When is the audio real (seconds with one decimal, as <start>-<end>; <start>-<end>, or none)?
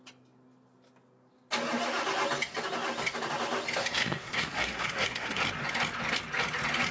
0.0-3.8; 5.4-6.9